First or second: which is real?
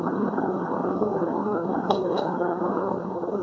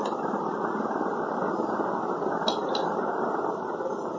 second